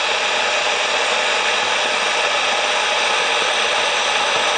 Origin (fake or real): real